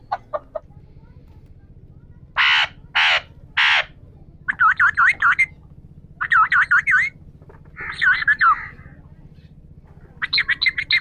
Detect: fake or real real